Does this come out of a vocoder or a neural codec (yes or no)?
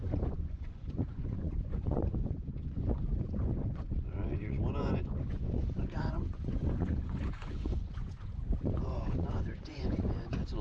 yes